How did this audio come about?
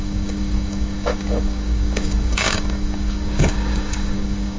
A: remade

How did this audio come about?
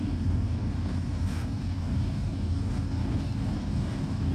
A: remade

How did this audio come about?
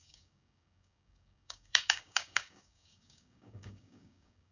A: remade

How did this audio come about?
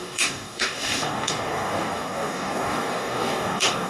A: remade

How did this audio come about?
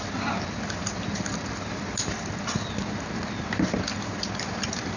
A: recorded